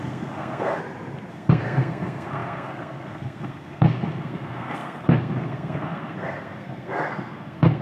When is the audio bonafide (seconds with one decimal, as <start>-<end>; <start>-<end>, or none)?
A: 0.8-1.3